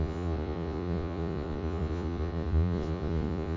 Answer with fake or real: fake